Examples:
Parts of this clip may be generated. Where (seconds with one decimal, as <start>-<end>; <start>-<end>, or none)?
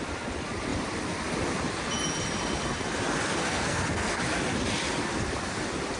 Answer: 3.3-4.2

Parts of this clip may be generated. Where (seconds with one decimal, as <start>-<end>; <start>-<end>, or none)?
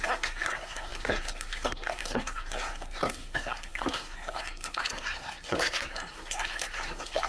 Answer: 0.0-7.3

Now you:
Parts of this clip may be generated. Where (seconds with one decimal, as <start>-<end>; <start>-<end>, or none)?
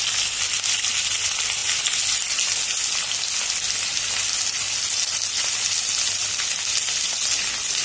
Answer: none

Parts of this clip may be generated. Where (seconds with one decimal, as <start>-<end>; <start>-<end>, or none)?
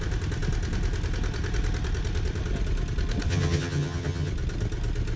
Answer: 3.3-4.3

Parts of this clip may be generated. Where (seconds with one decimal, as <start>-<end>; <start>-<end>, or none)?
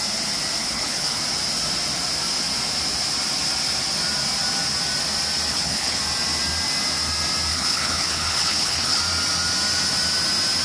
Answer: 0.6-1.2; 5.5-6.0; 7.5-9.0